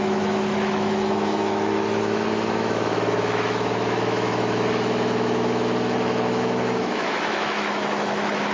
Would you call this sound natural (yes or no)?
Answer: no